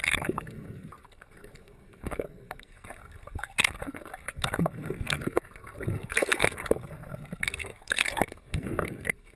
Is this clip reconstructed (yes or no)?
yes